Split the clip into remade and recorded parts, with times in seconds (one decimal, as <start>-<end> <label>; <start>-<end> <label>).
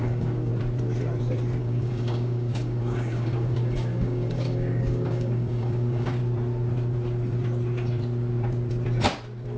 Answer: 0.0-0.5 remade; 0.5-1.6 recorded; 1.6-6.2 remade; 6.2-9.6 recorded